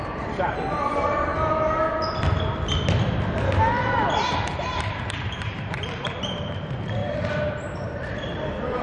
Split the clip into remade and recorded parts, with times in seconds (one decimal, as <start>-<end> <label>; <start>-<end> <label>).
0.0-1.3 remade; 1.3-4.6 recorded; 4.6-8.8 remade